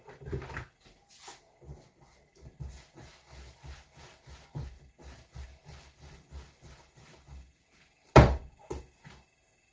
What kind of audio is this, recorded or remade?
recorded